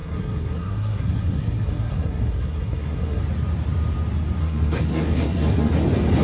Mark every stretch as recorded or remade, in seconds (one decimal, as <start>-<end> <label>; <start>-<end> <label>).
0.0-3.2 remade; 3.2-4.4 recorded; 4.4-5.7 remade; 5.7-6.2 recorded